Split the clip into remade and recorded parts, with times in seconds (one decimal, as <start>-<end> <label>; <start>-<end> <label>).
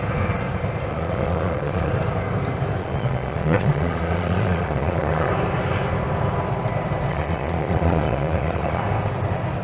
0.0-0.9 recorded; 0.9-1.9 remade; 1.9-2.8 recorded; 2.8-5.3 remade; 5.3-7.1 recorded; 7.1-8.8 remade; 8.8-9.6 recorded